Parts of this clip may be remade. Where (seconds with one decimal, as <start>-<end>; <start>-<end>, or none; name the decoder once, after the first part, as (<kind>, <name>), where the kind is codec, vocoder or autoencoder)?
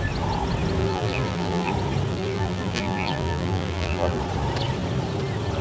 0.8-1.7 (vocoder, BigVGAN v2); 2.1-4.2